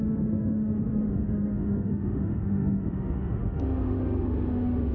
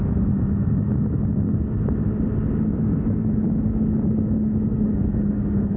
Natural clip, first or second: second